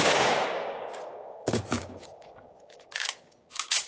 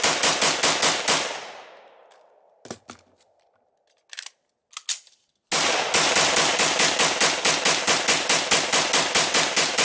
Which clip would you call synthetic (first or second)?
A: first